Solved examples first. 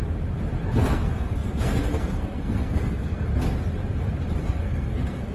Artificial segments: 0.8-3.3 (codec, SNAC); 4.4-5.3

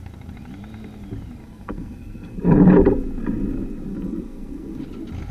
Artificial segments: 1.4-2.4 (codec, SNAC); 3.9-4.8

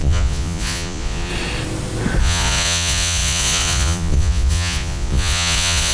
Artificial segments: 0.0-1.3 (vocoder, Vocos); 2.2-5.9

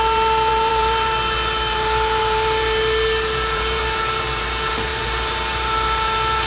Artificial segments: 0.0-6.5 (vocoder, BigVGAN v2)

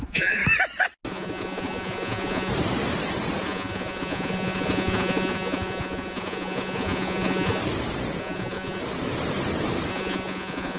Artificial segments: 0.0-0.4 (vocoder, Vocos); 1.1-2.5; 3.4-7.6; 8.2-8.8; 9.9-10.8